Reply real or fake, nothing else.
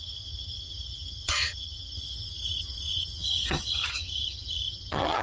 fake